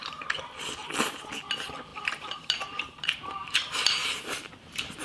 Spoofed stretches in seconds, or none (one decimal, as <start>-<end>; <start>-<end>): 1.9-4.5